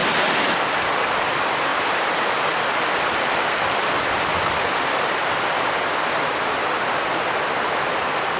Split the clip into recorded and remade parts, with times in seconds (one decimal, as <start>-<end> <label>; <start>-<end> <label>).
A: 0.0-0.9 remade; 0.9-1.7 recorded; 1.7-5.0 remade; 5.0-8.4 recorded